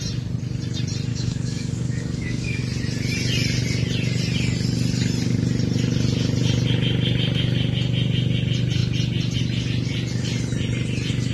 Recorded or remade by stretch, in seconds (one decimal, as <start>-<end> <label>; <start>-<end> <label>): 0.0-1.1 recorded; 1.1-2.6 remade; 2.6-11.3 recorded